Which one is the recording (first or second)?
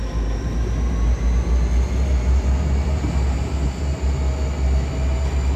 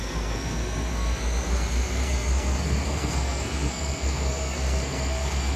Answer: first